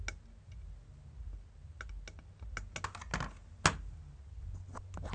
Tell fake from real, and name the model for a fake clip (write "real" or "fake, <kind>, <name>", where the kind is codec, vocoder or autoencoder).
real